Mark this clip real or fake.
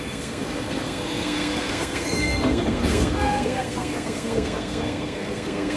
fake